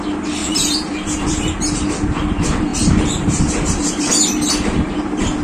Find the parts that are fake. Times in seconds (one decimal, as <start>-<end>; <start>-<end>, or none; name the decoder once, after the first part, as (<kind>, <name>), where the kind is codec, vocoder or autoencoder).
0.4-1.5 (vocoder, BigVGAN v2); 2.7-4.1